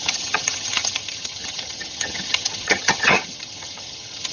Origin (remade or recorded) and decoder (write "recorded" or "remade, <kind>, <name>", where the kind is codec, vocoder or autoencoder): remade, vocoder, HiFi-GAN